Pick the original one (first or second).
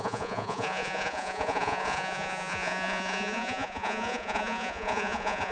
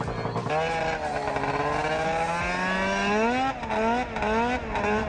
second